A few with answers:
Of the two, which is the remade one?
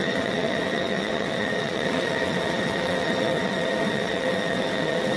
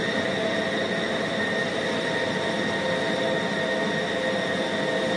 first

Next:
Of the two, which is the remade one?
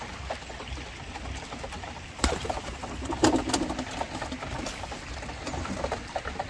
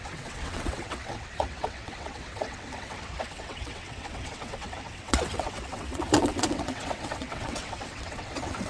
second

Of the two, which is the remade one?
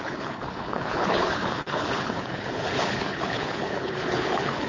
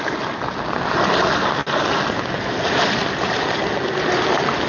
first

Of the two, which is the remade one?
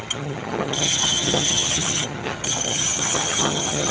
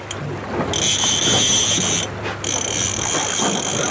first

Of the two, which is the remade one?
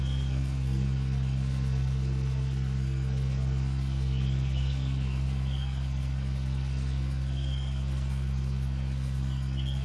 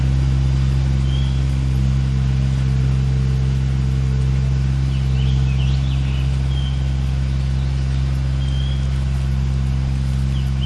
first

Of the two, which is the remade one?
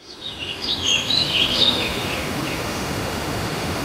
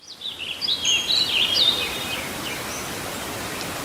first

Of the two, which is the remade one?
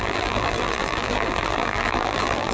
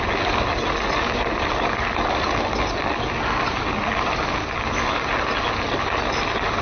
first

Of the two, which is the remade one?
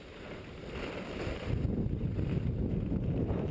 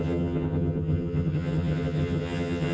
second